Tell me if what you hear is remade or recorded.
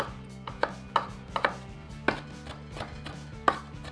recorded